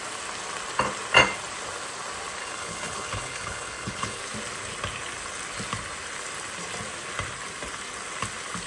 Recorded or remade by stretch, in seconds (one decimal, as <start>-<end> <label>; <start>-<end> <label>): 0.0-2.4 recorded; 2.4-4.2 remade; 4.2-8.7 recorded